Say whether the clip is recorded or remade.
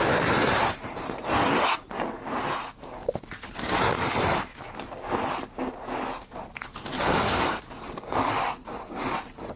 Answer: recorded